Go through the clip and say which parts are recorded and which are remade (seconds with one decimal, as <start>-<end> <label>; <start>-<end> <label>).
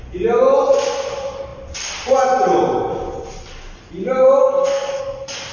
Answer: 0.0-4.4 recorded; 4.4-5.0 remade; 5.0-5.5 recorded